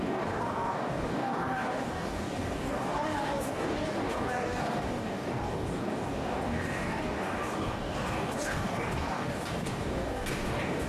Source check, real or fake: fake